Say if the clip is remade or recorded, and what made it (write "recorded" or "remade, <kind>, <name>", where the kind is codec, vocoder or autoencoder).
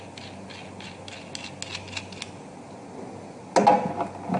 recorded